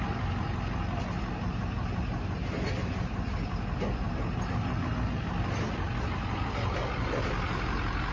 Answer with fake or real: real